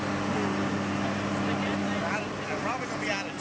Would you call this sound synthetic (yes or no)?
no